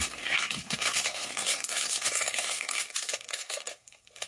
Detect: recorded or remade remade